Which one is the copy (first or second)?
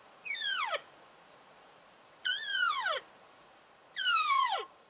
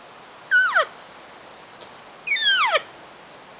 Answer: first